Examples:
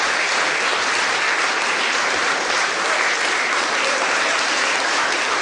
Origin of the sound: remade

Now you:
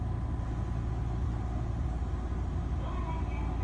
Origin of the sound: recorded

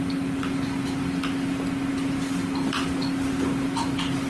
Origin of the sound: recorded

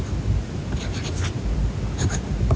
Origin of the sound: recorded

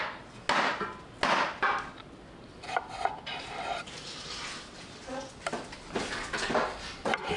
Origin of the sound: recorded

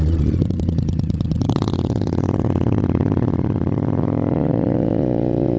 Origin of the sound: remade